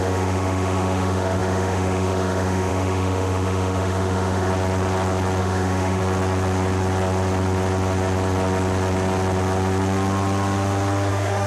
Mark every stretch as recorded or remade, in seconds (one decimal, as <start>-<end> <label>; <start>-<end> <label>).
0.0-4.5 remade; 4.5-5.4 recorded; 5.4-6.0 remade; 6.0-11.1 recorded; 11.1-11.5 remade